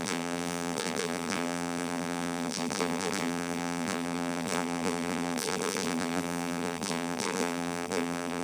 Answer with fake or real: fake